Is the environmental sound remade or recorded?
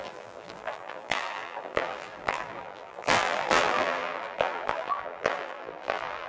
remade